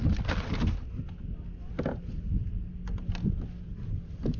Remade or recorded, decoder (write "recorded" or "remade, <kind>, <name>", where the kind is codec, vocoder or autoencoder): recorded